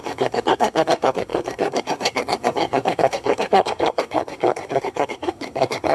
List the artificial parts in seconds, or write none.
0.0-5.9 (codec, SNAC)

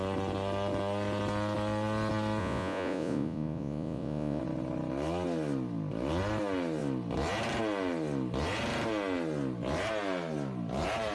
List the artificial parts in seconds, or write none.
2.4-4.4 (vocoder, Vocos)

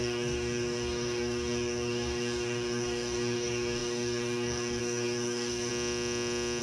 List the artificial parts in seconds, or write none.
0.0-5.7 (codec, DAC)

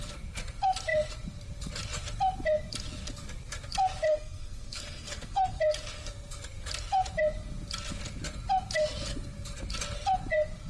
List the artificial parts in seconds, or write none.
4.1-5.6 (codec, SNAC)

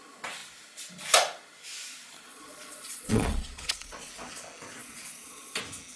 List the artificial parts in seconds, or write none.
2.3-4.1 (vocoder, Vocos); 4.8-5.6

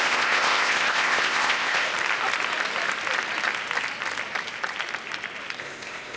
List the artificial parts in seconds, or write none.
0.0-1.9 (codec, ZipCodec); 5.6-6.2

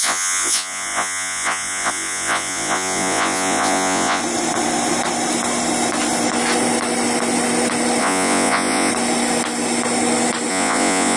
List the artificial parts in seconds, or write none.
0.0-4.2 (vocoder, Vocos); 8.0-8.9; 10.5-11.2